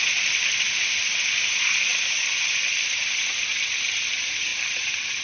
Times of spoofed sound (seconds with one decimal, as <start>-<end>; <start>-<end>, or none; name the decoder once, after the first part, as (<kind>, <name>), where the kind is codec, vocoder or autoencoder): none